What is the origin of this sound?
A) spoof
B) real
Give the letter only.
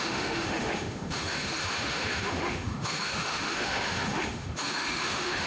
A